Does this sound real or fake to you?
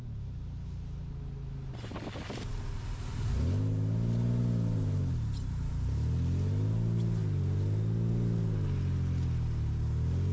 real